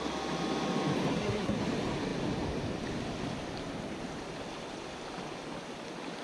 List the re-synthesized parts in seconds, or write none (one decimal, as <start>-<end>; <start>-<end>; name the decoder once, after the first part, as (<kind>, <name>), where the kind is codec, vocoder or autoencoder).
1.1-1.6 (codec, SNAC)